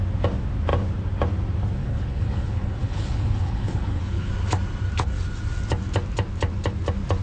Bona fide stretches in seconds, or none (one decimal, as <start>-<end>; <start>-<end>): 0.0-1.8; 4.3-7.2